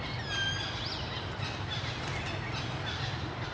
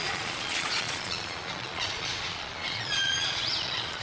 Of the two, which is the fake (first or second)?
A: second